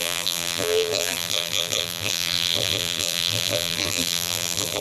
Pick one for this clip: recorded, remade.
remade